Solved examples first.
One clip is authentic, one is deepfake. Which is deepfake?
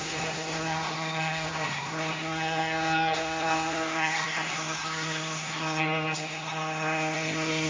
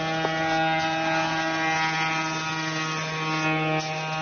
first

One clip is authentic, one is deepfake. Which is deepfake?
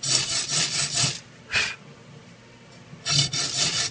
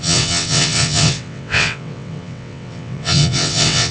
second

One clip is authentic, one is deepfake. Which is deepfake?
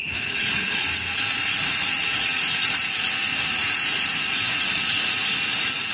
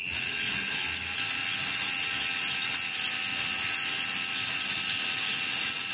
first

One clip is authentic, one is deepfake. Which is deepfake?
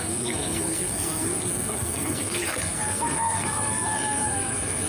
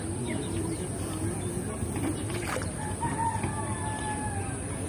first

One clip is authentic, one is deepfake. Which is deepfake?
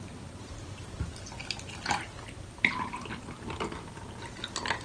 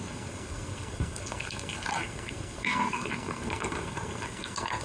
second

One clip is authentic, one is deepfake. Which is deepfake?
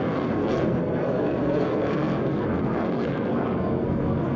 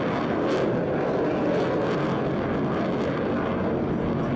first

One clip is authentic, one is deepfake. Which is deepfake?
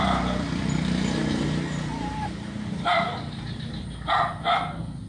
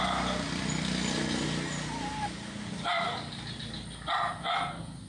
first